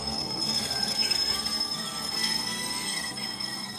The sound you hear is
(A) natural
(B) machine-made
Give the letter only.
B